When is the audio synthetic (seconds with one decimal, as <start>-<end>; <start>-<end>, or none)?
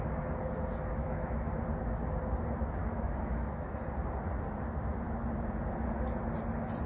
1.0-1.6; 2.8-3.7